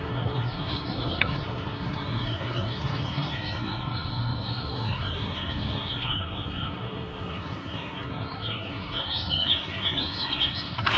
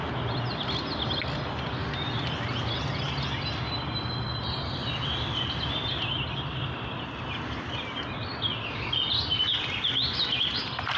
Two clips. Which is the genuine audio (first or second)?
second